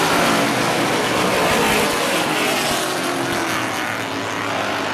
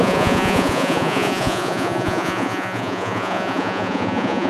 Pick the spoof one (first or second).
second